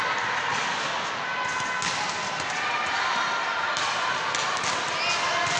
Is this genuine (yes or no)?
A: yes